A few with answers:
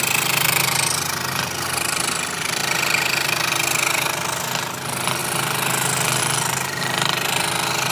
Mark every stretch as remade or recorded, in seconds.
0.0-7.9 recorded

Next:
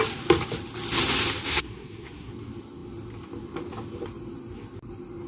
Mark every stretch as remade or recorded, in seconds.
0.0-1.5 recorded; 1.5-2.3 remade; 2.3-5.3 recorded

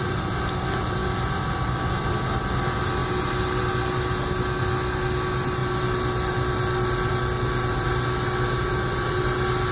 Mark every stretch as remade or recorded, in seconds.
0.0-9.7 recorded

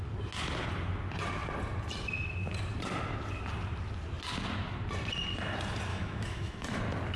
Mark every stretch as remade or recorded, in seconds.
0.0-5.9 recorded; 5.9-6.8 remade; 6.8-7.2 recorded

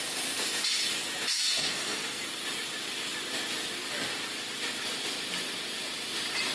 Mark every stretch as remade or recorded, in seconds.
0.0-1.3 recorded; 1.3-2.3 remade; 2.3-6.5 recorded

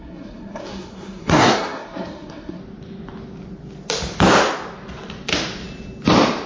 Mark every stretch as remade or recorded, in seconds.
0.0-2.6 remade; 2.6-6.5 recorded

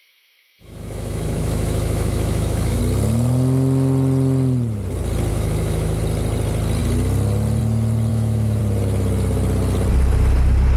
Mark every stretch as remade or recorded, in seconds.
0.0-2.8 remade; 2.8-5.3 recorded; 5.3-6.0 remade; 6.0-8.1 recorded; 8.1-8.6 remade; 8.6-10.8 recorded